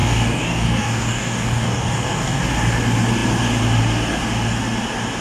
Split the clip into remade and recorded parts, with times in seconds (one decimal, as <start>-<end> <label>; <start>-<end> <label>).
0.0-2.4 remade; 2.4-5.2 recorded